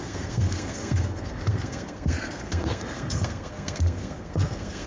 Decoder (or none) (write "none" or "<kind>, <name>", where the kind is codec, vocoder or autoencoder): codec, SNAC